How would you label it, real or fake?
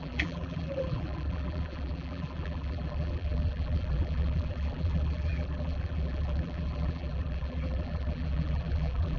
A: fake